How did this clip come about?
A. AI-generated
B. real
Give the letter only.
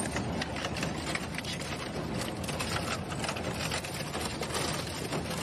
B